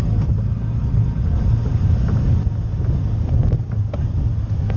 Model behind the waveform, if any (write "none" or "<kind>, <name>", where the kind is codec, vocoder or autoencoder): none